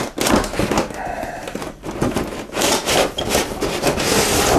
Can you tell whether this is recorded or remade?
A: recorded